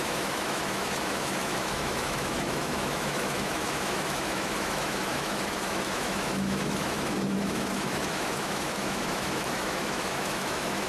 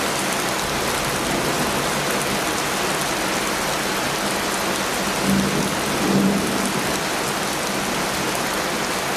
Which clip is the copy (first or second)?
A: first